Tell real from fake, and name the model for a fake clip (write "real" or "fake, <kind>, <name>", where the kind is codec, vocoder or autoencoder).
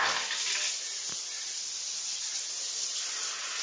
real